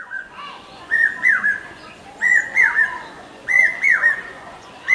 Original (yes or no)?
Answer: no